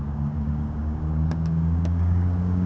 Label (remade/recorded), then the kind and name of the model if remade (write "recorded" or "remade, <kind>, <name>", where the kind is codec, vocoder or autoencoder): remade, codec, DAC